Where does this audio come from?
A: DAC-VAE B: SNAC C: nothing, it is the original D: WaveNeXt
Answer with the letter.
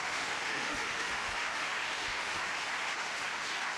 A